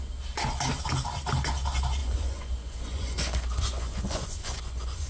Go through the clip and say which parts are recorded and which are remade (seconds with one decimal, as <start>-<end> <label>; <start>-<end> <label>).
0.0-2.0 recorded; 2.0-5.1 remade